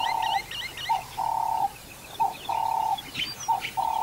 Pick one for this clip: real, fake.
real